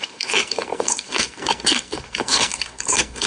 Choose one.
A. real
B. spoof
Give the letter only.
B